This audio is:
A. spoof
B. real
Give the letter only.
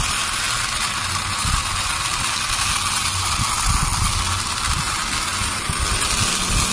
B